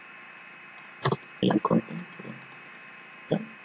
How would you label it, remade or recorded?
recorded